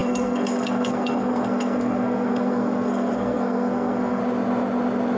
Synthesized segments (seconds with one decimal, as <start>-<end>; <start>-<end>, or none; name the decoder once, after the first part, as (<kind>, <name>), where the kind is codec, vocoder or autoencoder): 0.0-4.2 (codec, SNAC)